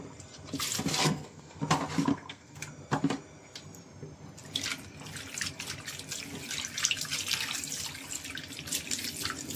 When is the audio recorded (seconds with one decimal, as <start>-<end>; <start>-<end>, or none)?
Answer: 0.0-1.0; 1.6-2.1; 2.6-9.6